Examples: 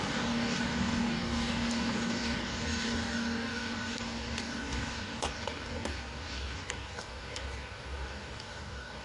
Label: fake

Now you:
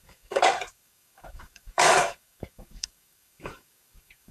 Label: fake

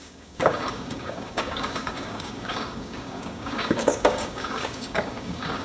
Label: fake